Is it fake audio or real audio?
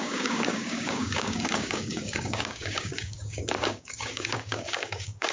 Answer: fake